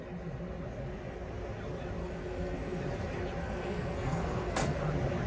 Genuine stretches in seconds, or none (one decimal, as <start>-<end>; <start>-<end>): 0.0-2.0; 2.8-3.4; 4.8-5.3